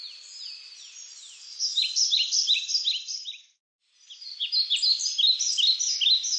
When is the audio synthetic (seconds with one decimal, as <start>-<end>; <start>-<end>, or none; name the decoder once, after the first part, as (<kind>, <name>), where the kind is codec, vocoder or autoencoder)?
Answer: none